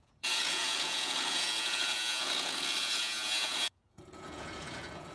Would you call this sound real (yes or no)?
no